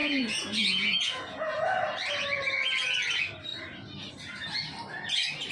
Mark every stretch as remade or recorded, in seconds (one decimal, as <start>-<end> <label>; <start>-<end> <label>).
0.0-1.7 remade; 1.7-5.5 recorded